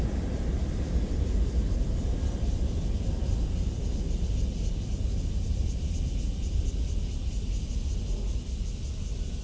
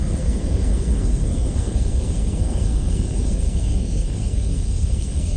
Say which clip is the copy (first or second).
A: second